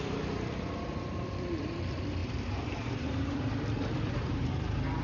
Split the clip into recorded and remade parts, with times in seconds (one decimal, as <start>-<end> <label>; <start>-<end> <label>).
0.0-2.2 recorded; 2.2-4.5 remade; 4.5-5.0 recorded